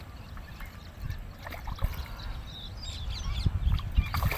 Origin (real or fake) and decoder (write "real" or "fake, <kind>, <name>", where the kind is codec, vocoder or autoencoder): real